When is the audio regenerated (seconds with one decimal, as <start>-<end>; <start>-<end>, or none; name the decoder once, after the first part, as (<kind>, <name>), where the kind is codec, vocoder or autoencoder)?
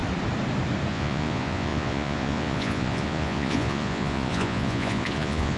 0.9-5.6 (vocoder, Vocos)